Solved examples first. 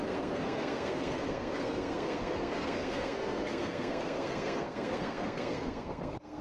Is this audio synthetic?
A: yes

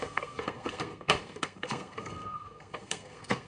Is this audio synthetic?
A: yes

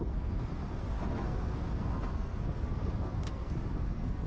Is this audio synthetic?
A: yes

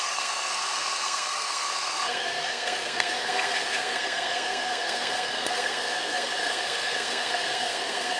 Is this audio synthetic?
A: yes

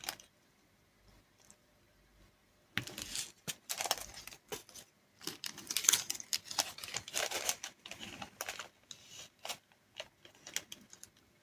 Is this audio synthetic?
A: no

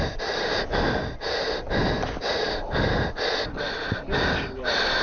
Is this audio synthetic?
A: no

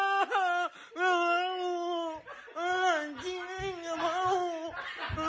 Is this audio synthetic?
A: no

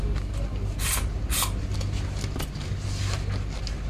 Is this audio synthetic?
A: no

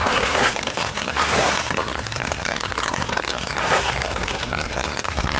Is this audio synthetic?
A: yes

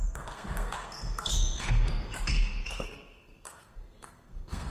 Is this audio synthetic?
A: yes